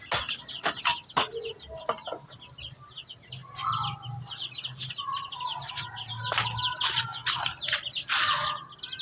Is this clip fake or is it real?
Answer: real